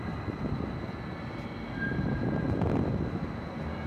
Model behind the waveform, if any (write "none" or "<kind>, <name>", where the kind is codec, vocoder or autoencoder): none